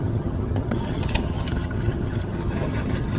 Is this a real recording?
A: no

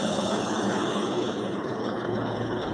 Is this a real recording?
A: no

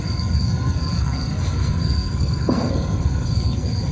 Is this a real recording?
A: no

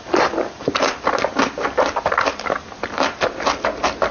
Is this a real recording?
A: no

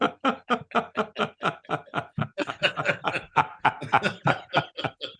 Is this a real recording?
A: yes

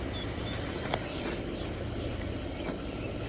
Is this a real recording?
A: yes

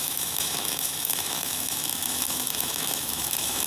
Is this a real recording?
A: no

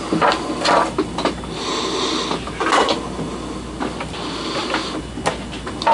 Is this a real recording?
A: yes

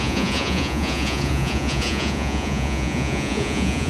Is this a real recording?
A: no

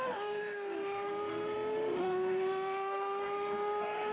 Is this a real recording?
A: no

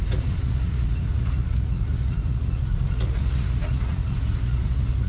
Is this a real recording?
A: no